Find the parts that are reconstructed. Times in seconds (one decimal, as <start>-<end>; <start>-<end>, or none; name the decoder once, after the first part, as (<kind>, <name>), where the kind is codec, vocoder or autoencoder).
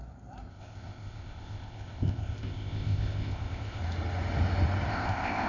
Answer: 0.5-3.8 (codec, ZipCodec); 4.9-5.5